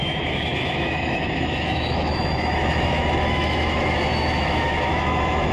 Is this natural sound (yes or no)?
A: no